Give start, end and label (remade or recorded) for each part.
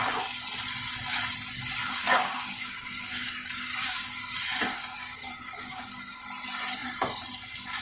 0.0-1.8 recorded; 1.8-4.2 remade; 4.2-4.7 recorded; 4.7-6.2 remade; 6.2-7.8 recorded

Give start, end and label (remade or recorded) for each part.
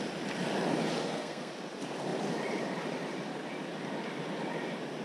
0.0-1.0 recorded; 1.0-1.5 remade; 1.5-5.0 recorded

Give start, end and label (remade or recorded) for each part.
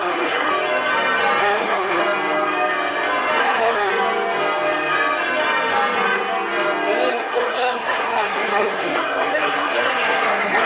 0.0-0.5 remade; 0.5-1.4 recorded; 1.4-2.0 remade; 2.0-3.4 recorded; 3.4-3.9 remade; 3.9-7.1 recorded; 7.1-10.7 remade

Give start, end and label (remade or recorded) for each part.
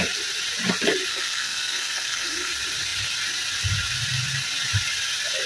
0.0-1.1 recorded; 1.1-2.5 remade; 2.5-5.5 recorded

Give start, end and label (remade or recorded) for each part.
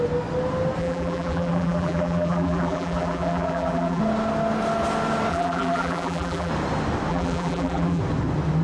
0.0-0.8 recorded; 0.8-4.0 remade; 4.0-5.3 recorded; 5.3-6.5 remade; 6.5-7.1 recorded; 7.1-8.0 remade; 8.0-8.6 recorded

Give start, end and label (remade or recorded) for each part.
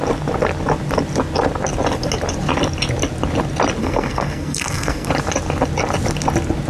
0.0-3.8 recorded; 3.8-5.1 remade; 5.1-6.7 recorded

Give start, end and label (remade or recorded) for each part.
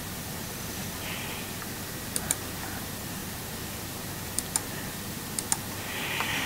0.0-6.5 recorded